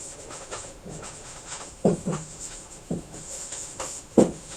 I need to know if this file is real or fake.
fake